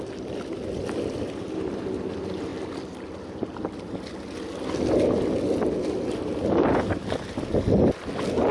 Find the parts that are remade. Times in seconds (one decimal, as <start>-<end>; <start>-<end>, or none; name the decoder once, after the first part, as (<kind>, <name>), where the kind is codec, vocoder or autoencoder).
none